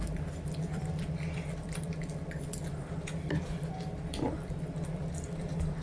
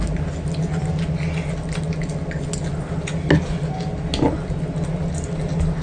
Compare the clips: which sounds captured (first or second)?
second